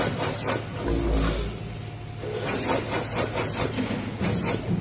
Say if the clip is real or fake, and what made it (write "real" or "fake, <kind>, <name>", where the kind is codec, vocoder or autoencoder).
real